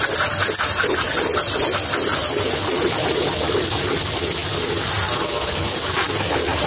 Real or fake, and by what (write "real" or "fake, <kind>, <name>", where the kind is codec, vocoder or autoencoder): real